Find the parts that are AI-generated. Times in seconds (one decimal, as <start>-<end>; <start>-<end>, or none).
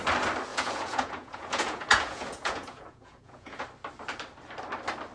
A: 0.5-3.6